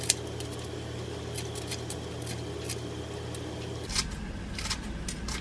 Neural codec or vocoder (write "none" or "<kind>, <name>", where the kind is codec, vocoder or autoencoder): none